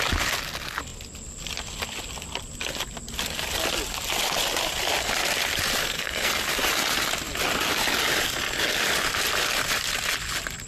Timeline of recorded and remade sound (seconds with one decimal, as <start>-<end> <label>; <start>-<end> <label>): 0.0-5.8 recorded; 5.8-6.3 remade; 6.3-10.7 recorded